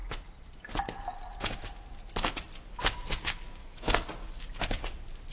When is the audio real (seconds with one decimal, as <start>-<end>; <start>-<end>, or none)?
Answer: 0.0-3.6; 4.1-5.3